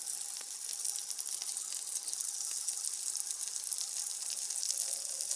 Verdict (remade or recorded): recorded